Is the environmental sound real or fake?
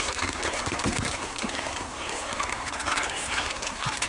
fake